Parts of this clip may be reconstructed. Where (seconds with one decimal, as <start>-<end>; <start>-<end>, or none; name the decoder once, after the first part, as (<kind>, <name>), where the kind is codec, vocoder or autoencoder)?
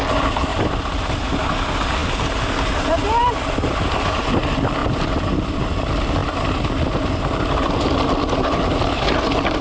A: 0.5-1.2 (vocoder, BigVGAN v2)